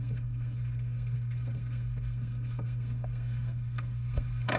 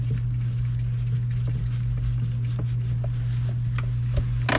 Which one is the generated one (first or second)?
first